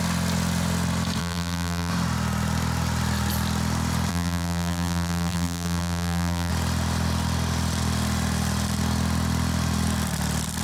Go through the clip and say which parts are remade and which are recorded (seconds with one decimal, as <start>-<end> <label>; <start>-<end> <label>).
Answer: 0.0-1.2 recorded; 1.2-1.9 remade; 1.9-4.1 recorded; 4.1-6.5 remade; 6.5-10.6 recorded